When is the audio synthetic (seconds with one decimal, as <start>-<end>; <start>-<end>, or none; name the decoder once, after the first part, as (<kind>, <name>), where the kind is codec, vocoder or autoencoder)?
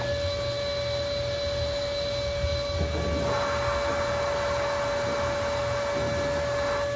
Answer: none